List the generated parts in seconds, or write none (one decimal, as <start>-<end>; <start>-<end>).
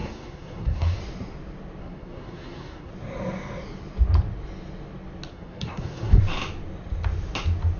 0.0-1.0; 1.8-2.9; 5.3-6.2